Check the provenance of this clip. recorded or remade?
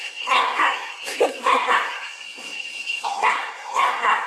remade